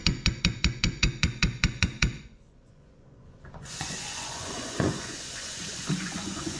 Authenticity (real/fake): fake